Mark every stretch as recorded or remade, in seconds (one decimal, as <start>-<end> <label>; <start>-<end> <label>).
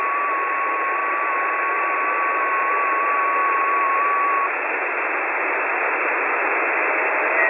0.0-1.0 recorded; 1.0-1.5 remade; 1.5-7.5 recorded